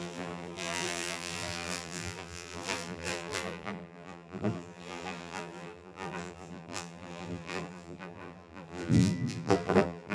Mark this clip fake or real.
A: fake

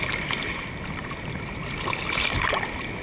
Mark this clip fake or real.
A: real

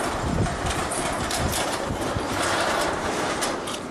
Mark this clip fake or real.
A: fake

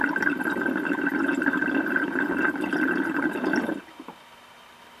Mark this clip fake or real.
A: real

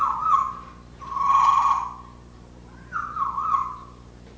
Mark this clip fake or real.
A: fake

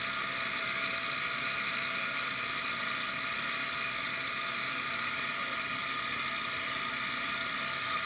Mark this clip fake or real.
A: real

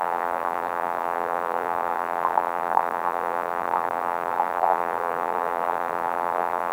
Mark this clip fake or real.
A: fake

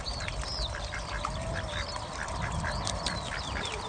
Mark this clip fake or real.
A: fake